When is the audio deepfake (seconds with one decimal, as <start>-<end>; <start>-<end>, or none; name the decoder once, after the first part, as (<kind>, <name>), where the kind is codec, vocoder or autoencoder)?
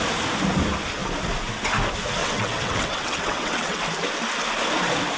2.2-3.8 (vocoder, WaveNeXt)